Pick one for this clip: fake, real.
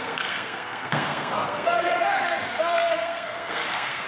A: fake